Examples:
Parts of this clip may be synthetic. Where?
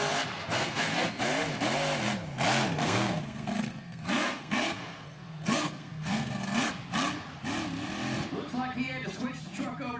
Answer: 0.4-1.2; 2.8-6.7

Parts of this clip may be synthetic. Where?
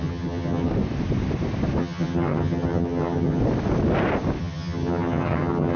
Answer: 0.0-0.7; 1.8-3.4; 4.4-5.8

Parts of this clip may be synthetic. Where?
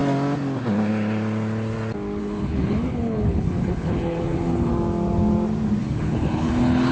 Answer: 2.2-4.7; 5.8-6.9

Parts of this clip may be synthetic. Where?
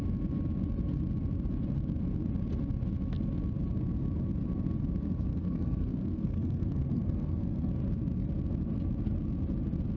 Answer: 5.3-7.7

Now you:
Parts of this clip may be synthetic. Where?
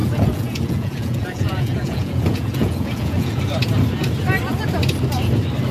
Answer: 0.0-3.4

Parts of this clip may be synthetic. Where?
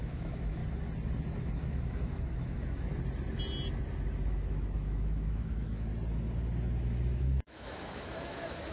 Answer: 0.0-0.6; 1.4-2.9; 4.3-5.9; 7.2-8.7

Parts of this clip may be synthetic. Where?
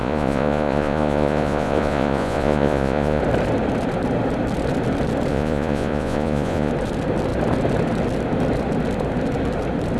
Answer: 0.0-3.2; 5.3-6.7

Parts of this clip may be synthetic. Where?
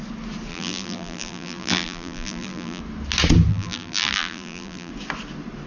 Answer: 0.5-2.8; 3.5-4.9